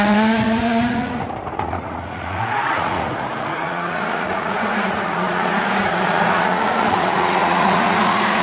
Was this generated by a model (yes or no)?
yes